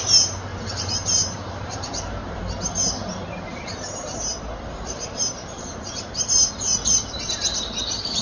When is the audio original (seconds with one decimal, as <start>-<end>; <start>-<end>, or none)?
0.0-0.5; 2.4-3.0; 6.5-8.2